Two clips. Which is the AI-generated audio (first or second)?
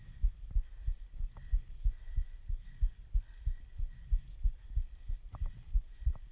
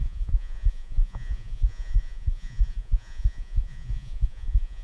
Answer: second